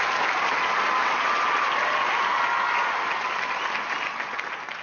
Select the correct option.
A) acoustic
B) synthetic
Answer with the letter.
A